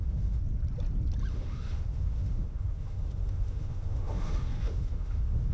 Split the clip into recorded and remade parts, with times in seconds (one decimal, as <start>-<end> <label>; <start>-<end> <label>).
0.0-0.4 remade; 0.4-1.3 recorded; 1.3-5.5 remade